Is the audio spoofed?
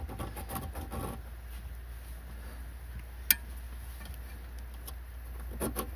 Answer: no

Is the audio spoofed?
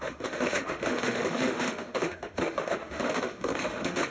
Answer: yes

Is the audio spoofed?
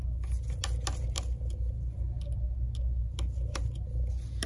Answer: no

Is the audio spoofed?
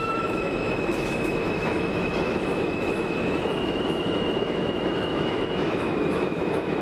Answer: yes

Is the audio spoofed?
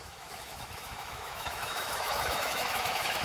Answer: yes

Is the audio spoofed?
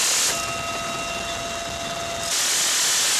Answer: no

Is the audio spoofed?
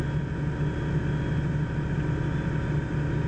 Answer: no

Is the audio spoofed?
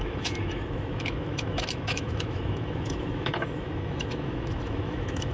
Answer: yes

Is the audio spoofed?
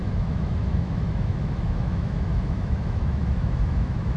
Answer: yes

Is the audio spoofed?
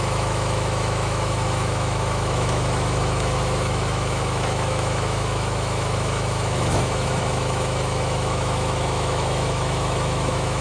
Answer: yes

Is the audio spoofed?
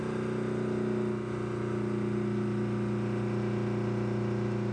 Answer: no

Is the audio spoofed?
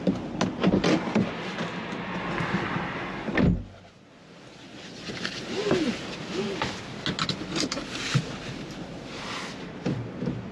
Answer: no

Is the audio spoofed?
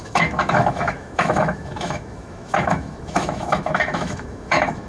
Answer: yes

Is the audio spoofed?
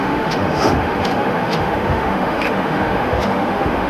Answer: yes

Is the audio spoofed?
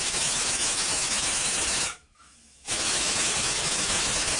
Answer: yes